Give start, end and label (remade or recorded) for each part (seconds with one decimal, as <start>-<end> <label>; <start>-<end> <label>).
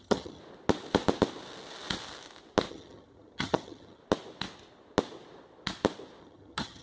0.0-0.4 remade; 0.4-2.7 recorded; 2.7-4.0 remade; 4.0-6.2 recorded; 6.2-6.8 remade